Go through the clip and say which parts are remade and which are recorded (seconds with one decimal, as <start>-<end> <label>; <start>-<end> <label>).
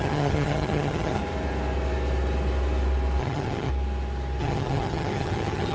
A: 0.0-1.2 remade; 1.2-3.2 recorded; 3.2-3.7 remade; 3.7-4.4 recorded; 4.4-5.7 remade